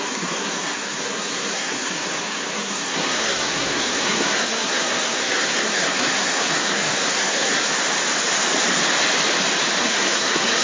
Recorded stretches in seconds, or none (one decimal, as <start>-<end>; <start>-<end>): 7.7-9.8